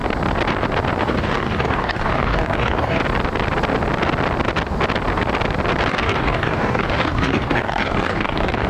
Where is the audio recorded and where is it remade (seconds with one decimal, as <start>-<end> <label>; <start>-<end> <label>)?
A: 0.0-1.0 recorded; 1.0-3.0 remade; 3.0-5.9 recorded; 5.9-8.7 remade